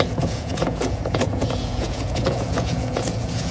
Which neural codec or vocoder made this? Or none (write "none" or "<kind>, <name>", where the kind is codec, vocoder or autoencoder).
vocoder, Vocos